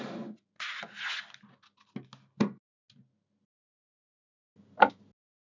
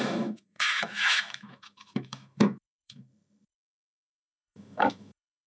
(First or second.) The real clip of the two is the first